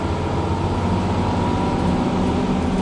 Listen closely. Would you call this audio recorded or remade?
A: recorded